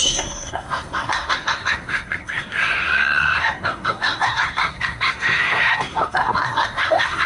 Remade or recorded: remade